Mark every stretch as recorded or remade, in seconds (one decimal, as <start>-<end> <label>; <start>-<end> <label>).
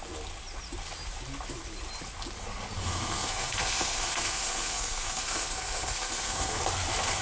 0.0-2.8 recorded; 2.8-6.6 remade; 6.6-7.2 recorded